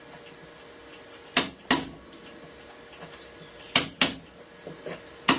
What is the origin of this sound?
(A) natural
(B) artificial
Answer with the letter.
A